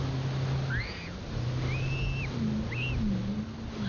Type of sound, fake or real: real